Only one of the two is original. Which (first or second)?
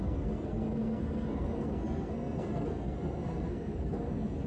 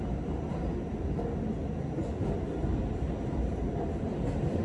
second